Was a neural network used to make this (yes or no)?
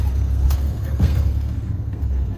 yes